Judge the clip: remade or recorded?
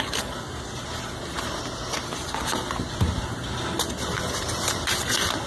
recorded